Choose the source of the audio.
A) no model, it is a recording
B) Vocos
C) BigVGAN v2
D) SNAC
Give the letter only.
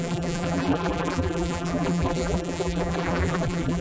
C